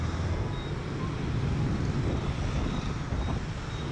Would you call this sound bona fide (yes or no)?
yes